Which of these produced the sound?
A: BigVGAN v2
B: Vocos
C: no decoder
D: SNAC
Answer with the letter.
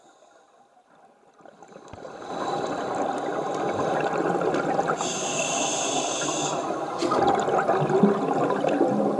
C